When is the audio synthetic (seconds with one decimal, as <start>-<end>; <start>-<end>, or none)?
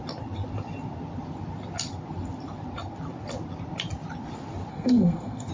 4.7-5.5